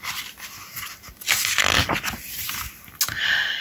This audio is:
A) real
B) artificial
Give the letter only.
A